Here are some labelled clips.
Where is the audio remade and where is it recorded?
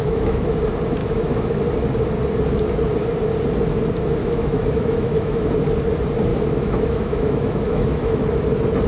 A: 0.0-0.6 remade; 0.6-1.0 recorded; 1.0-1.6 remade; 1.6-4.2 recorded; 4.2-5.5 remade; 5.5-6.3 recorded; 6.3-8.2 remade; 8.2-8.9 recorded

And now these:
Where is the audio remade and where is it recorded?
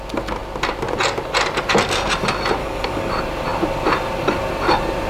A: 0.0-2.6 recorded; 2.6-3.1 remade; 3.1-5.1 recorded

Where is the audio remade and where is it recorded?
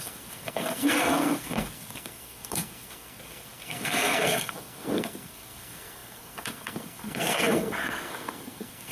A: 0.0-8.9 remade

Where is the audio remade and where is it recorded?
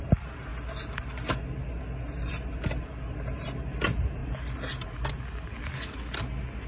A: 0.0-6.7 recorded